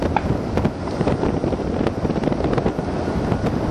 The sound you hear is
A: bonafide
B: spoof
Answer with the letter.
A